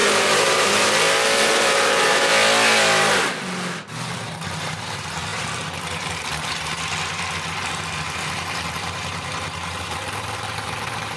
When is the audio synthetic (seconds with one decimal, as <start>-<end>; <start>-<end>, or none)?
0.0-2.3; 4.0-11.2